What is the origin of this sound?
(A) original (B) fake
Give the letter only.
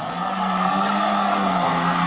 B